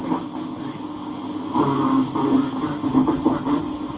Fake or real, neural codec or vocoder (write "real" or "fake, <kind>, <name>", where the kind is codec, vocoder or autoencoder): real